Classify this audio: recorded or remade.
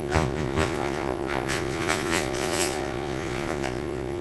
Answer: remade